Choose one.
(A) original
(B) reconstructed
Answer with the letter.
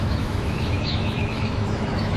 B